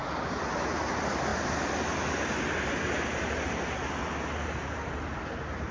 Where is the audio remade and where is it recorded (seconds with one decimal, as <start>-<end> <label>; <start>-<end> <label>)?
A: 0.0-5.7 recorded